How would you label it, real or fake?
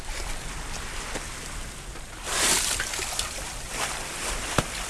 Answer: real